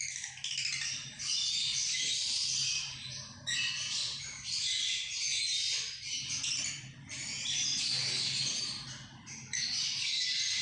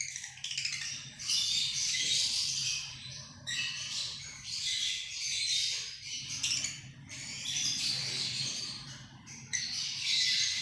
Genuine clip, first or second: first